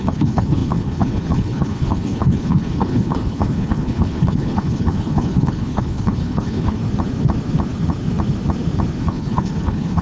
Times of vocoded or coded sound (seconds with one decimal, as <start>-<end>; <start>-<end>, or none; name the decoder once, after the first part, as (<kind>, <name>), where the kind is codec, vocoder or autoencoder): 0.0-6.8 (codec, HILCodec); 9.0-10.0